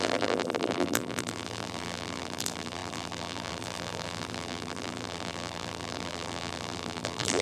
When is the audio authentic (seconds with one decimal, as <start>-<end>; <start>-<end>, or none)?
none